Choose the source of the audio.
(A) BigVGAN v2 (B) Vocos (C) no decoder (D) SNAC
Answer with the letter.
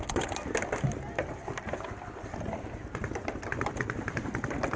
C